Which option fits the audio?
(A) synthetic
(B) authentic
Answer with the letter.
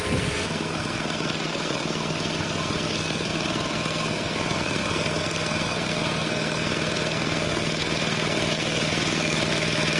A